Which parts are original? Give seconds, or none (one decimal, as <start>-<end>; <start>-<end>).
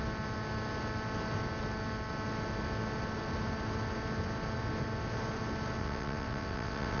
0.0-5.8